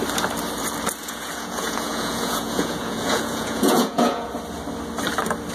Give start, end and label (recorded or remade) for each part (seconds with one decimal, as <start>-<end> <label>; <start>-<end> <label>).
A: 0.0-1.0 recorded; 1.0-4.3 remade; 4.3-5.5 recorded